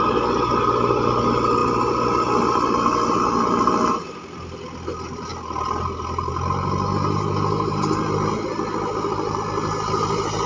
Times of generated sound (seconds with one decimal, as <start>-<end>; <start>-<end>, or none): none